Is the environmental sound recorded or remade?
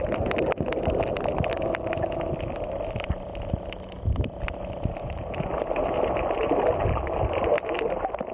recorded